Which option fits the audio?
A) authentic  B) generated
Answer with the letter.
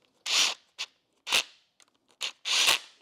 A